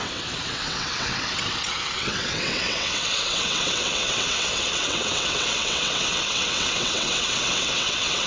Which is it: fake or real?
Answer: fake